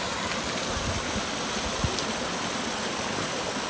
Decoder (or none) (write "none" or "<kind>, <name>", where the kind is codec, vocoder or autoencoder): none